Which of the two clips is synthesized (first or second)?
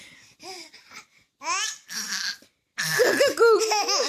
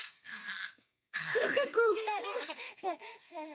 second